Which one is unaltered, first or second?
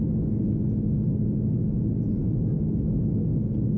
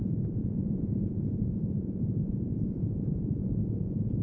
first